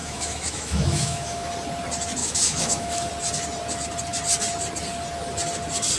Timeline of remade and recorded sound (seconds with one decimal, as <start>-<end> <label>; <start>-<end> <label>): 0.0-1.5 remade; 1.5-2.2 recorded; 2.2-3.1 remade; 3.1-6.0 recorded

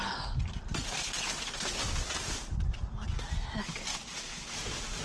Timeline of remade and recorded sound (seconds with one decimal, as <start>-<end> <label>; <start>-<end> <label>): 0.0-5.0 recorded

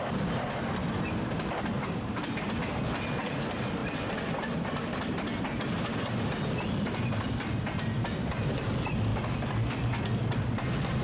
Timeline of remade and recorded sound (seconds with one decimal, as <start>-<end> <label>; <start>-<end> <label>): 0.0-11.0 recorded

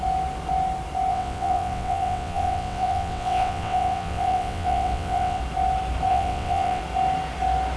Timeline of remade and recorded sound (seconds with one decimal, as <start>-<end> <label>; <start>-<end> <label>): 0.0-1.1 recorded; 1.1-5.4 remade; 5.4-6.1 recorded; 6.1-6.8 remade; 6.8-7.8 recorded

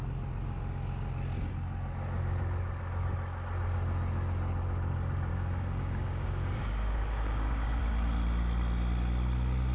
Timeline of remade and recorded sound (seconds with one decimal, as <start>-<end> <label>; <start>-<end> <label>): 0.0-5.3 recorded; 5.3-7.8 remade; 7.8-9.7 recorded